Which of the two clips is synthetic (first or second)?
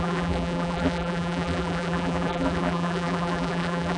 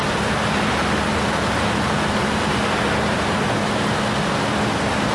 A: first